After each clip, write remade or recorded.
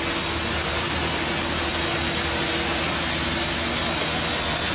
recorded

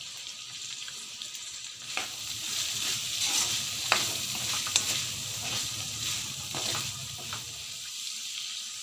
remade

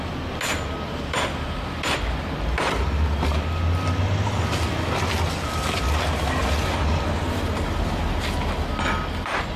recorded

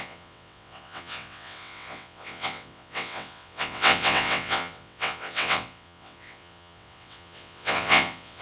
remade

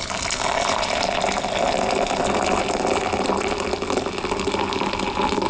recorded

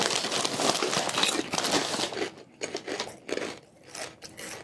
recorded